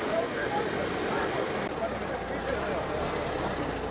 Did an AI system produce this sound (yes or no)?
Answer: no